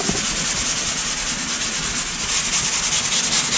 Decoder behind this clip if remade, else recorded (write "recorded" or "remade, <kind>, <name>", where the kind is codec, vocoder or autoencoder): recorded